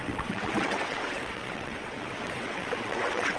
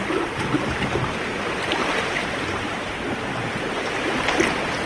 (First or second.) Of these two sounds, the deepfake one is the first